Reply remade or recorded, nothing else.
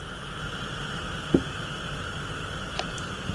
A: recorded